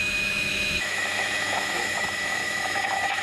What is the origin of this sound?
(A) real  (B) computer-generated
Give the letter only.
B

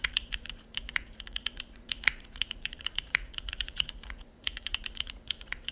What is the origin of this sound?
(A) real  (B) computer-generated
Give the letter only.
B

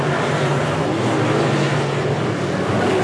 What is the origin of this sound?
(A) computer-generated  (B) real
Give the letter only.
B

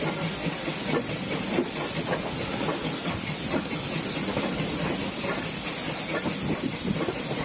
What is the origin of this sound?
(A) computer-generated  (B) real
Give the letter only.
B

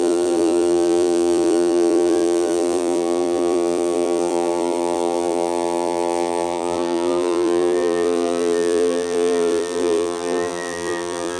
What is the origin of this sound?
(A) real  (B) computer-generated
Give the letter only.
B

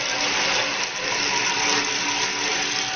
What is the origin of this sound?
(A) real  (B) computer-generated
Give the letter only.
A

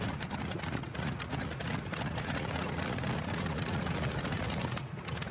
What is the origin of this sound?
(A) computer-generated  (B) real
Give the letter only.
A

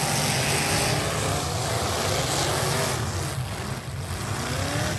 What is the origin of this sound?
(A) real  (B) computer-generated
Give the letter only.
A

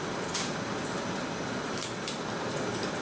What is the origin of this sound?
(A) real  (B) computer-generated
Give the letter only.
A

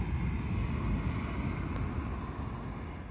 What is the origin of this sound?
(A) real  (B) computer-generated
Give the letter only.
A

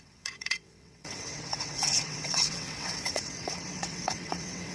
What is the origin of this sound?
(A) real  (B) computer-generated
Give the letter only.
B